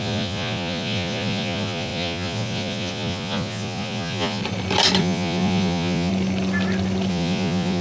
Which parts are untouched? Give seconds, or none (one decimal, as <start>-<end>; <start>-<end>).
4.4-5.0; 6.1-7.1